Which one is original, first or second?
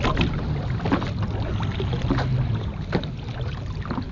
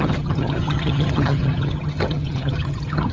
first